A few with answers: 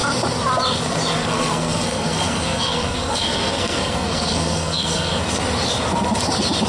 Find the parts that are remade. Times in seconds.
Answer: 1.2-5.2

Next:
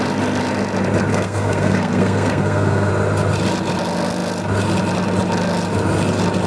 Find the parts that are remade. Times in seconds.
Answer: 1.1-2.9

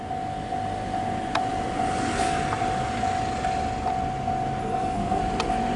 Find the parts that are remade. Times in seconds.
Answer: 4.6-5.2

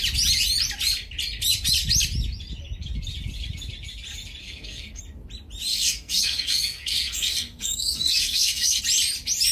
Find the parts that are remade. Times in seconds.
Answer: 4.4-5.0; 5.7-8.8

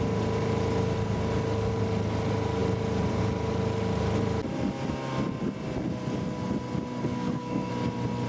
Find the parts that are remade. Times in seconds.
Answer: 7.0-7.7